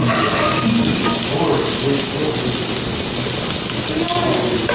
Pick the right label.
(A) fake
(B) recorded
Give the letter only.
B